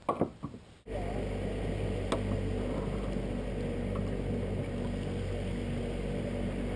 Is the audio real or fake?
real